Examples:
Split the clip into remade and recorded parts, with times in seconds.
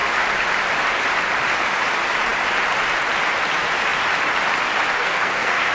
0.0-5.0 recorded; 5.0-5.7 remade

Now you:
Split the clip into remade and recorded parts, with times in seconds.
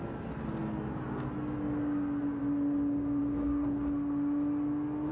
0.0-5.1 recorded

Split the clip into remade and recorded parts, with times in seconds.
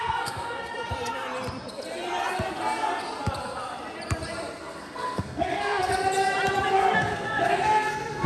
0.0-0.7 remade; 0.7-4.6 recorded; 4.6-5.9 remade; 5.9-6.7 recorded; 6.7-8.3 remade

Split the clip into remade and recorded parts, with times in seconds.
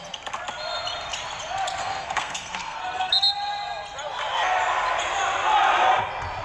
0.0-1.8 recorded; 1.8-3.1 remade; 3.1-6.4 recorded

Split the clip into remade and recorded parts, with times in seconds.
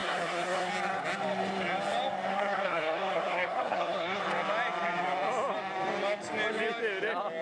0.0-0.7 remade; 0.7-2.3 recorded; 2.3-4.2 remade; 4.2-7.4 recorded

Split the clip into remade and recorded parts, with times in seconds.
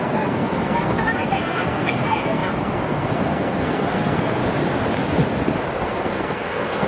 0.0-4.4 remade; 4.4-5.8 recorded; 5.8-6.9 remade